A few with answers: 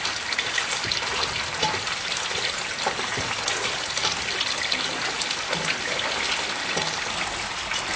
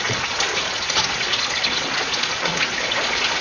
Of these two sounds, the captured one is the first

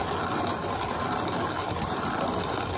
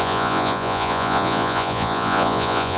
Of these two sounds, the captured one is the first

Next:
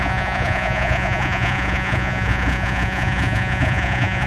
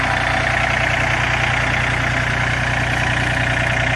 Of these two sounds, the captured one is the second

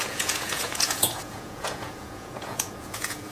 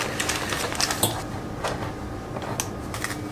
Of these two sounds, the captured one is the second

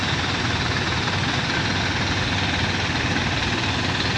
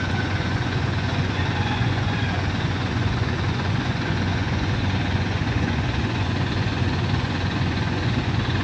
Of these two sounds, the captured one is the first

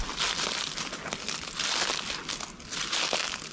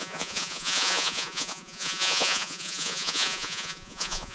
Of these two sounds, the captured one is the first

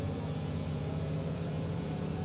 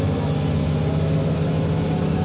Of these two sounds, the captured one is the second